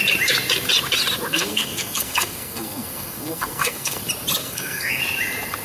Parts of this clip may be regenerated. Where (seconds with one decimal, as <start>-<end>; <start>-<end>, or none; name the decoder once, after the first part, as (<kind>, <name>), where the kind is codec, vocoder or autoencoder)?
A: 1.3-4.0 (codec, SNAC); 4.4-5.0